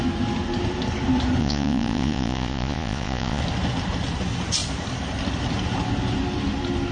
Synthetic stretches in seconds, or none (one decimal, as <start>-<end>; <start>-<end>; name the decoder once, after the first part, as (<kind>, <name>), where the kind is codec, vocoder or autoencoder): 1.4-3.4 (vocoder, Vocos)